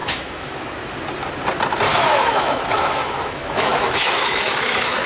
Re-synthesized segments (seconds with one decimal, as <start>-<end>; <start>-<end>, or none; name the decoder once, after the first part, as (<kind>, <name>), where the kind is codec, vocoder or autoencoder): 0.0-0.7 (autoencoder, DAC-VAE); 1.9-5.1